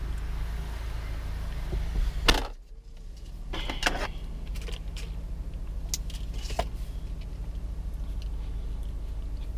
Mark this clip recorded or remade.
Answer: recorded